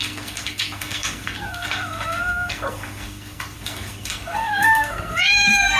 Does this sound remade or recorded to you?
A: remade